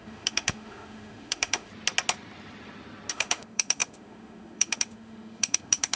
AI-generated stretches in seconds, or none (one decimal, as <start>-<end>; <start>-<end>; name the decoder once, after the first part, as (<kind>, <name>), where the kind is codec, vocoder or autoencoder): 0.0-1.7 (autoencoder, DAC-VAE); 3.1-6.0